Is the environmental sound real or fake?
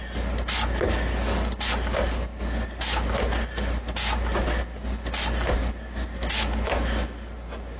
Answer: real